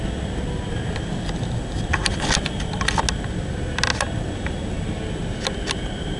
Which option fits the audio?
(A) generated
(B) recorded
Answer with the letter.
B